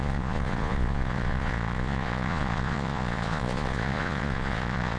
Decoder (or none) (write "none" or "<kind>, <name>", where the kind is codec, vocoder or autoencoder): vocoder, Vocos